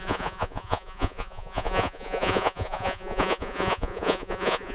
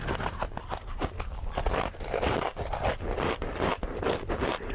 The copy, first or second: first